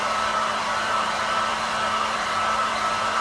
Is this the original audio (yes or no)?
no